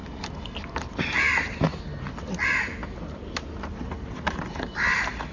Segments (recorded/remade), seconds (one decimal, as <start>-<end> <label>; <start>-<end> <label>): 0.0-5.3 recorded